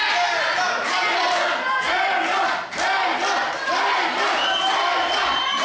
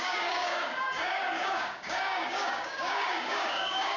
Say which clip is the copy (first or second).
second